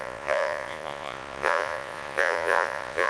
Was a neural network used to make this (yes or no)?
yes